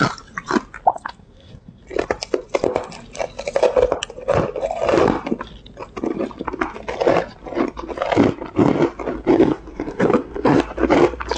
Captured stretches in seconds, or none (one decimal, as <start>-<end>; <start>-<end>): 0.0-0.9; 1.8-9.3; 10.6-11.4